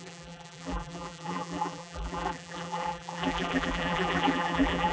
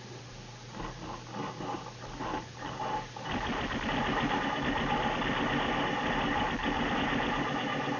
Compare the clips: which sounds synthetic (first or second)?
first